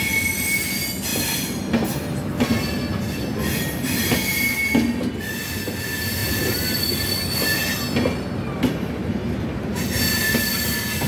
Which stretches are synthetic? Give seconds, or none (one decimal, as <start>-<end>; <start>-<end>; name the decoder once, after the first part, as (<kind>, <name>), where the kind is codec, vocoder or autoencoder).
none